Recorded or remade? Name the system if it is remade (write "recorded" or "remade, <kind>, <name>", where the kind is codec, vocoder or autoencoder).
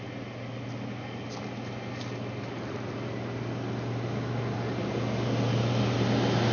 recorded